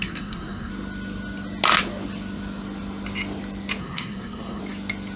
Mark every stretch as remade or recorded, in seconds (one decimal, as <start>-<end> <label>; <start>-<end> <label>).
0.0-0.7 remade; 0.7-3.8 recorded; 3.8-4.6 remade; 4.6-5.2 recorded